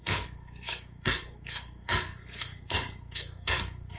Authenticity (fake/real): fake